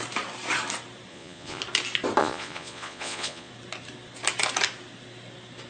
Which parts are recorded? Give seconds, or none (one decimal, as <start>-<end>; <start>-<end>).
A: 0.0-1.1; 1.6-2.2; 3.5-5.7